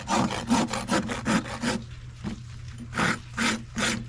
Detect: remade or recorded recorded